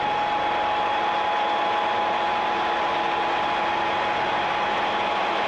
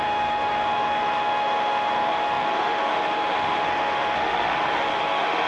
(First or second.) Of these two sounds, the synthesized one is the second